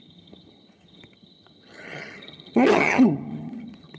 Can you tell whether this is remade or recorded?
remade